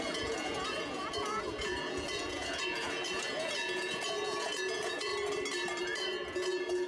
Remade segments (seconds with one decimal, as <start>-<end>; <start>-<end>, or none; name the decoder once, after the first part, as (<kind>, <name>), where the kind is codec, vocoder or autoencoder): 0.0-5.1 (vocoder, Vocos); 5.8-6.9